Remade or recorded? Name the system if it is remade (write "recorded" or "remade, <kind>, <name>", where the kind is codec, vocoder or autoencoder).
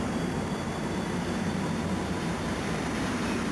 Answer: remade, vocoder, BigVGAN v2